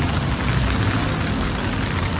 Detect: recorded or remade recorded